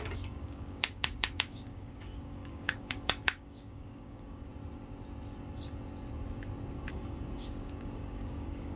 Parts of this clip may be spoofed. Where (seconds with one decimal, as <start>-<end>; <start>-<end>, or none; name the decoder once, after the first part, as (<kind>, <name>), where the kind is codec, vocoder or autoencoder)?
0.0-4.5 (codec, DAC); 6.9-8.8